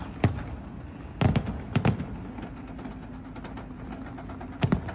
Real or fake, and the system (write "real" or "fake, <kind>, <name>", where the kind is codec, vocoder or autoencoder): real